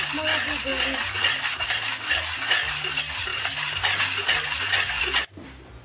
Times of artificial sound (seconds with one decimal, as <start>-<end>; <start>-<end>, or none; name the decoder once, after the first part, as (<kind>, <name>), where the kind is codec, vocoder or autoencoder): none